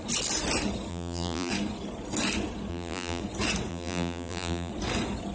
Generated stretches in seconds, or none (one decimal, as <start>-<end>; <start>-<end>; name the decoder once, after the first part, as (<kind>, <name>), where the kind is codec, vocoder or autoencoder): 0.9-1.5 (vocoder, BigVGAN v2); 2.7-3.2; 3.7-4.7